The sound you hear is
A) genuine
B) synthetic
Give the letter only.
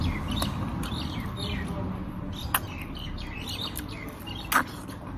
A